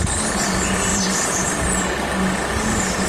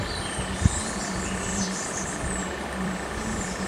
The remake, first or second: second